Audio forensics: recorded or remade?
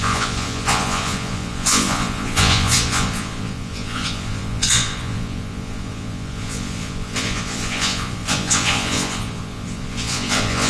remade